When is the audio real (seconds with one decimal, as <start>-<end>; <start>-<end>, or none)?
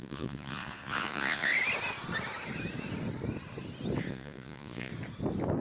1.5-4.1; 4.9-5.6